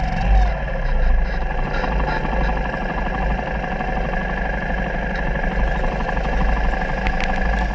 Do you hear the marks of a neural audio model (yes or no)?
no